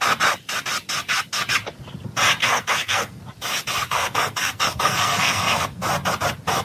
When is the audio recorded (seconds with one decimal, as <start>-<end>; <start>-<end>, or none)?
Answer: 0.0-2.4; 3.2-3.8; 5.8-6.6